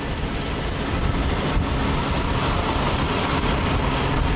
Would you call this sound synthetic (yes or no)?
no